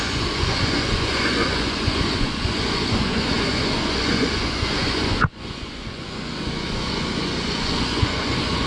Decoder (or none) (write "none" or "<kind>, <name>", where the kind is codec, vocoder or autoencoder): vocoder, Vocos